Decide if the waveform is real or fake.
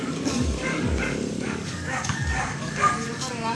fake